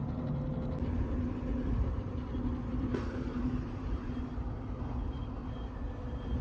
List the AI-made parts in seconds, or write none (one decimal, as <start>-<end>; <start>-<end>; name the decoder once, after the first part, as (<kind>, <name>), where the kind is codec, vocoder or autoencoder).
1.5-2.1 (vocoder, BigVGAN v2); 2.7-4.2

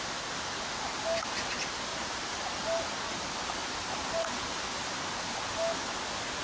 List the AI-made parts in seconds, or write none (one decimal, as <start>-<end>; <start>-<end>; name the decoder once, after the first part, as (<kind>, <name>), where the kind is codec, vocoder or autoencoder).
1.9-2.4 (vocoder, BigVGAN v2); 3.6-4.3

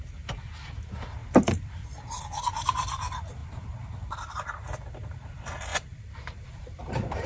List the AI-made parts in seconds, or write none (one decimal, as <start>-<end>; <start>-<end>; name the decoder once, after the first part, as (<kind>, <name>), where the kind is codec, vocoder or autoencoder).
1.2-2.2 (vocoder, BigVGAN v2); 3.4-3.9; 5.7-7.3

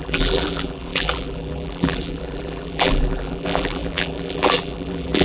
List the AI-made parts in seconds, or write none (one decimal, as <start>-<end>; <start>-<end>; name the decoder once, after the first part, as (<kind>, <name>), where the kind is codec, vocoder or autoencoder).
0.0-5.2 (vocoder, BigVGAN v2)

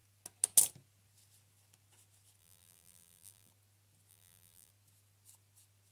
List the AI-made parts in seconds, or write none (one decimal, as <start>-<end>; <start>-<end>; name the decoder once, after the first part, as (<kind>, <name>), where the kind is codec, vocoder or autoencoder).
2.4-3.5 (vocoder, BigVGAN v2); 4.1-4.7

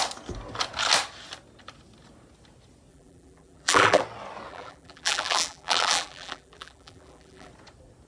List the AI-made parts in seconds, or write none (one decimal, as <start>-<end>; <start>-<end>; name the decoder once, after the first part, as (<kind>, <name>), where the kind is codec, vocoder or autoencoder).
2.9-4.0 (vocoder, BigVGAN v2); 4.5-7.5

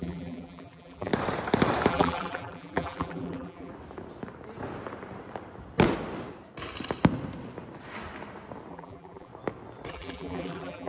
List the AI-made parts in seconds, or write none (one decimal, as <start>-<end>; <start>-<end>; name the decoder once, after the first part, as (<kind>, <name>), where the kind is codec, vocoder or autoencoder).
0.0-1.1 (vocoder, BigVGAN v2); 1.9-3.7; 8.7-9.3; 9.9-10.9

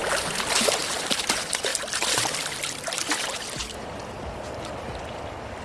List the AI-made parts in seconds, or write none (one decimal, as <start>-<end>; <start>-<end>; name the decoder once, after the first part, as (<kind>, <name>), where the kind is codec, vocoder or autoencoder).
1.7-3.1 (vocoder, BigVGAN v2); 3.6-4.2